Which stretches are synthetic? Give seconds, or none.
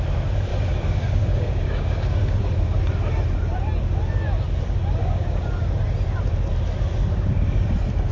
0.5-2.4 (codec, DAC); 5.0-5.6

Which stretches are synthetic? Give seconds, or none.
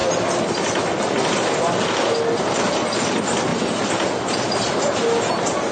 none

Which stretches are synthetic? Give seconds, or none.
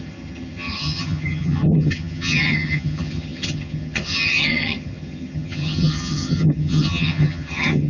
0.0-7.9 (vocoder, HiFi-GAN)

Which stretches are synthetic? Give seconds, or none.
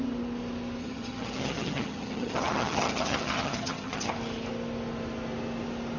0.8-4.1 (vocoder, HiFi-GAN)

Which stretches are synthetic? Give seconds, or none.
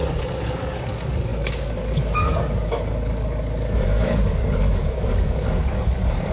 0.0-6.3 (codec, DAC)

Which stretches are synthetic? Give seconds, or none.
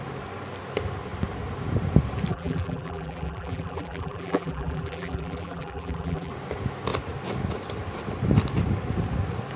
2.3-6.3 (vocoder, BigVGAN v2)